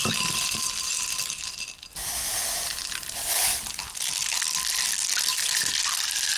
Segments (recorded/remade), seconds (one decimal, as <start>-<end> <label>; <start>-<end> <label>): 0.0-6.4 recorded

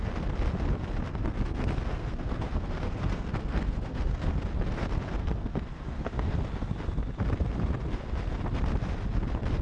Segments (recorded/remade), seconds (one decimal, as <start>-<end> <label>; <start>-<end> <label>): 0.0-1.1 recorded; 1.1-4.4 remade; 4.4-5.2 recorded; 5.2-6.4 remade; 6.4-9.6 recorded

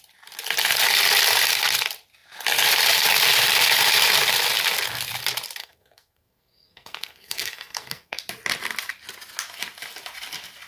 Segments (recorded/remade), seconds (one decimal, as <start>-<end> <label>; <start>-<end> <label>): 0.0-5.6 recorded; 5.6-8.2 remade; 8.2-10.7 recorded

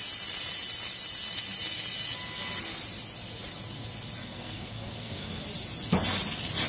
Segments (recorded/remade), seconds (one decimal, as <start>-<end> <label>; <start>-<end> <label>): 0.0-4.2 recorded; 4.2-5.4 remade; 5.4-6.7 recorded

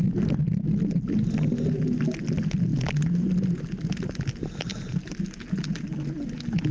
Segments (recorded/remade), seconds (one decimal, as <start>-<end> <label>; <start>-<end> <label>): 0.0-6.7 recorded

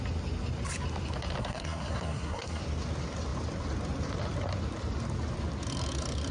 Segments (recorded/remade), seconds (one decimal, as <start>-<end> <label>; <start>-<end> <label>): 0.0-1.4 recorded; 1.4-2.6 remade; 2.6-6.3 recorded

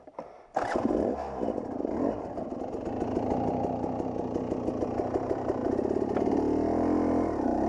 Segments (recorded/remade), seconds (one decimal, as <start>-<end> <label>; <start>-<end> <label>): 0.0-7.7 recorded

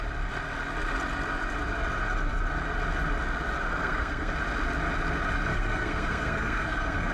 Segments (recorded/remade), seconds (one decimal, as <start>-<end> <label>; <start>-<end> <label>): 0.0-3.7 recorded; 3.7-4.3 remade; 4.3-5.5 recorded; 5.5-7.1 remade